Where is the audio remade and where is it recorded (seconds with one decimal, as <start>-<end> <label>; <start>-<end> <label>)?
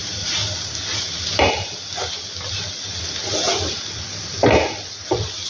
0.0-5.5 recorded